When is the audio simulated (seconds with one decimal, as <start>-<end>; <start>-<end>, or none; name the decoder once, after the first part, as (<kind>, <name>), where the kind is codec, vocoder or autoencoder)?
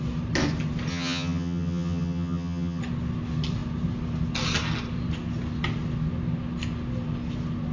0.9-2.8 (vocoder, HiFi-GAN)